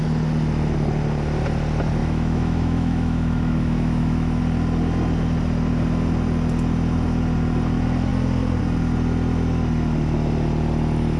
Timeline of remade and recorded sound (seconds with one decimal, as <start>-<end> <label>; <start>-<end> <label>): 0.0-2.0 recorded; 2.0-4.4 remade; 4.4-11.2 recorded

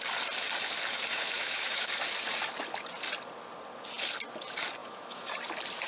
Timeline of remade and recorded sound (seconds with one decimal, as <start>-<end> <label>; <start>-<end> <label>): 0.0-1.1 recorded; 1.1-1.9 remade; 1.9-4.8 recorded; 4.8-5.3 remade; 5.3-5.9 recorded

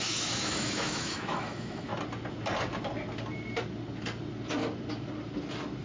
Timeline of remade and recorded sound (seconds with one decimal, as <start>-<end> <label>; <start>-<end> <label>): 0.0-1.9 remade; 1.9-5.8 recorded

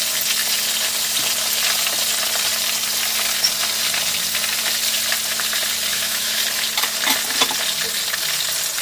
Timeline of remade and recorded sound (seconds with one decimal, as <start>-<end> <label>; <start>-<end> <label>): 0.0-5.9 recorded; 5.9-6.4 remade; 6.4-8.8 recorded